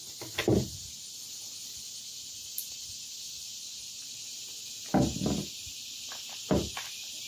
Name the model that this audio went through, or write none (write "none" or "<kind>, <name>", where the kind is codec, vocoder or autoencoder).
none